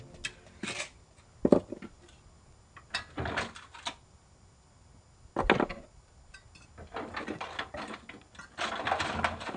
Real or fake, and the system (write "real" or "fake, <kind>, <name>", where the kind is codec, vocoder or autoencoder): real